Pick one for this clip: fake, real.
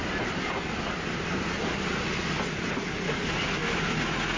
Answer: real